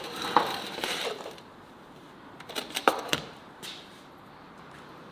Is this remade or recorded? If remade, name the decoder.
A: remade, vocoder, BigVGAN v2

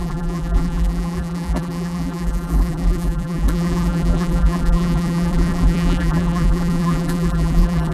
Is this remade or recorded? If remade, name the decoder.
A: remade, vocoder, BigVGAN v2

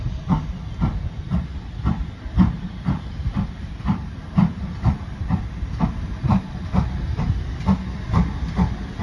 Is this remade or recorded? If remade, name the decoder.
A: remade, vocoder, BigVGAN v2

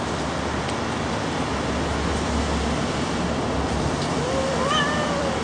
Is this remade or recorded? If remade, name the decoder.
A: recorded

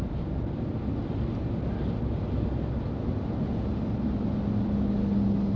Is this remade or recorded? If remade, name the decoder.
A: recorded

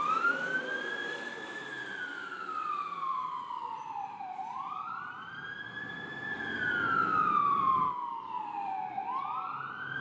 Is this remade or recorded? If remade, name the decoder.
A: remade, vocoder, BigVGAN v2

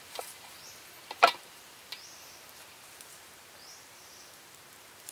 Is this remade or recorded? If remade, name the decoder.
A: remade, vocoder, BigVGAN v2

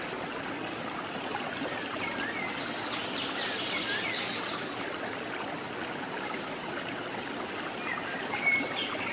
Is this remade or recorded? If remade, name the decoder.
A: recorded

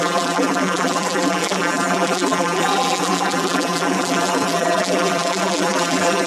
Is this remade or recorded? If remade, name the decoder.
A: remade, vocoder, BigVGAN v2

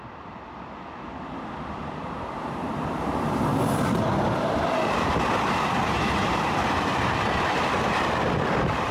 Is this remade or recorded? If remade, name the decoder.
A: remade, vocoder, BigVGAN v2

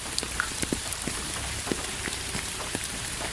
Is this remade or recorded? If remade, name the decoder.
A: remade, vocoder, BigVGAN v2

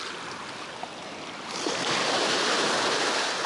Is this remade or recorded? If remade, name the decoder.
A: recorded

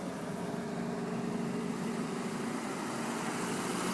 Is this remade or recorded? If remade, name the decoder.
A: recorded